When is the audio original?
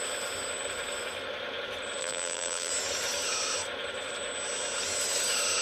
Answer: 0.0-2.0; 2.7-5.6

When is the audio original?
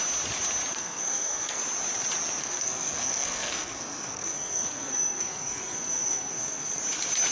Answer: 0.0-0.7; 1.6-2.4; 6.8-7.3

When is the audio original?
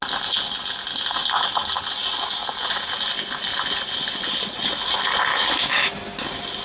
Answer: 0.0-5.3; 5.9-6.6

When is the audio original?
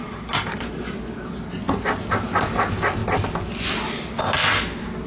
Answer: 0.0-5.1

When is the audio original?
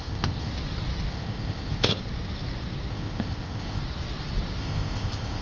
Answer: 0.5-1.1; 2.0-2.9; 3.8-4.6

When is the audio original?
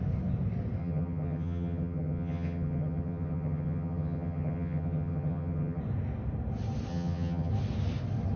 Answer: 0.0-0.8; 5.8-6.9; 7.5-8.4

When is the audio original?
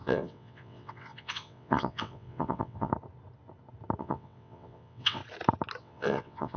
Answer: 2.9-4.0; 5.2-5.8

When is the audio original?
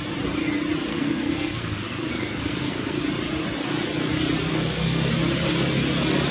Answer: 0.0-0.9; 3.0-4.5; 5.1-6.3